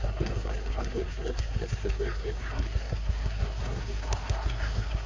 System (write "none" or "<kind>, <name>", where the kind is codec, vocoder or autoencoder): codec, SNAC